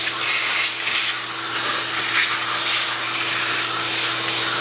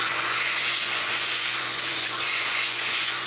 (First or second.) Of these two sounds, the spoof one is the second